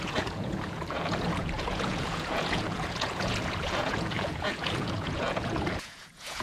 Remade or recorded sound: remade